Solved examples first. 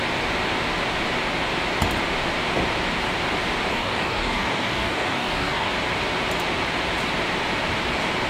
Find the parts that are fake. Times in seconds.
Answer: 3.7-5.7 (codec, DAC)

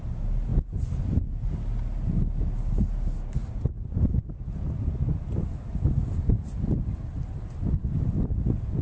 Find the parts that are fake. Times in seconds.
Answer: 3.4-8.8 (vocoder, BigVGAN v2)

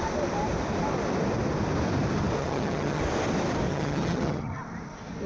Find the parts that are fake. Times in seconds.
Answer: 2.4-3.0 (vocoder, HiFi-GAN); 3.7-4.6

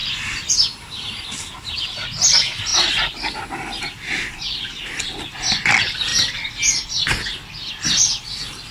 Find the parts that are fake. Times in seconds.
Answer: none